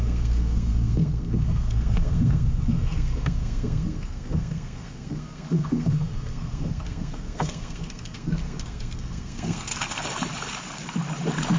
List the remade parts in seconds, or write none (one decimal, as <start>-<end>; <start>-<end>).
0.0-9.7